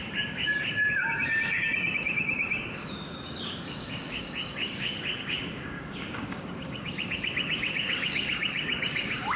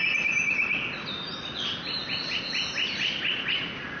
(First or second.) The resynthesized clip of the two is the first